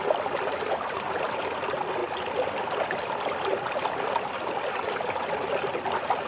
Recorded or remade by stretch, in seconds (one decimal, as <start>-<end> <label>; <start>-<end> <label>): 0.0-2.0 recorded; 2.0-3.9 remade; 3.9-6.3 recorded